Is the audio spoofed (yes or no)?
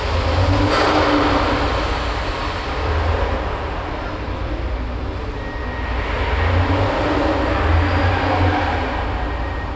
no